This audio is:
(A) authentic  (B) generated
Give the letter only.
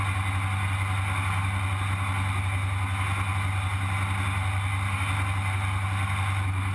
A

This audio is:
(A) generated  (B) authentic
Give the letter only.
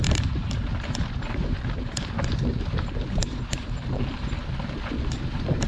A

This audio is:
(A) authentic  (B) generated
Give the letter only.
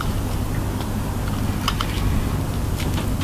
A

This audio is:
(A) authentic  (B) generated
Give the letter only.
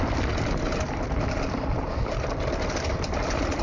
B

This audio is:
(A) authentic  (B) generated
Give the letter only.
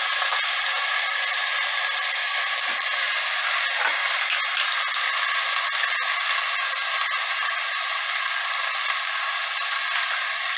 B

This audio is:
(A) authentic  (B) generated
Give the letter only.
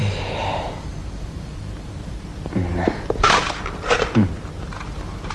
B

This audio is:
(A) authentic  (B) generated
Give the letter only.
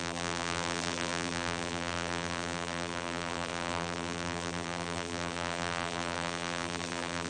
B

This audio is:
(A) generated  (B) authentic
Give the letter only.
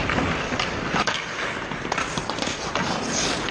A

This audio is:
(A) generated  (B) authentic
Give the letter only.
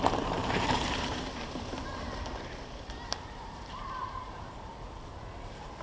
A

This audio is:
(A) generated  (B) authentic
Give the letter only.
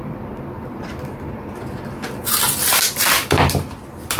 A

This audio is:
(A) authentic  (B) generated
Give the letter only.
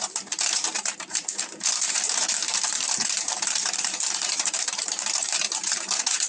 B